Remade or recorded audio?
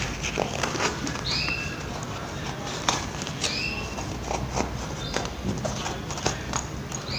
recorded